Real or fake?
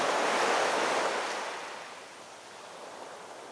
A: real